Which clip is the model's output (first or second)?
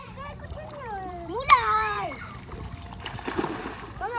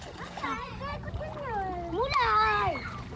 first